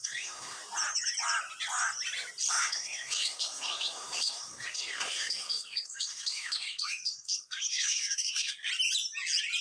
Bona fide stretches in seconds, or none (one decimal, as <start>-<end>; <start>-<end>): 0.6-2.5; 8.7-9.6